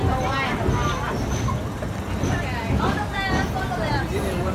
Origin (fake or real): real